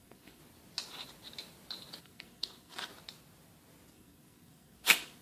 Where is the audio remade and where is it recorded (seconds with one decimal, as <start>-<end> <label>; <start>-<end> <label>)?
0.0-0.4 remade; 0.4-2.0 recorded; 2.0-2.9 remade; 2.9-3.9 recorded; 3.9-5.2 remade